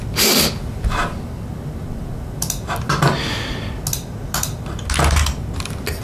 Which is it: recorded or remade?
recorded